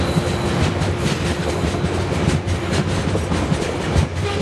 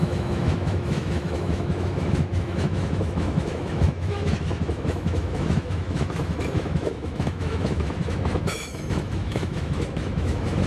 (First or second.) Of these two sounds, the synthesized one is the second